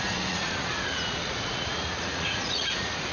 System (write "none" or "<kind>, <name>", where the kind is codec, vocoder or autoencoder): vocoder, Vocos